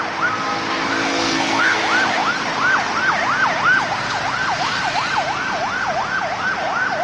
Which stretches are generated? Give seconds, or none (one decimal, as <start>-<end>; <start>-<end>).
1.1-1.8